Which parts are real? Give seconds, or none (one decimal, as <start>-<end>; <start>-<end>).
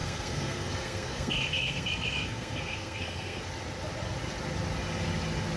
3.4-5.6